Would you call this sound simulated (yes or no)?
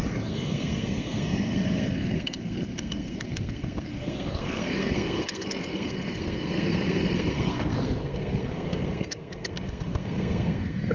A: yes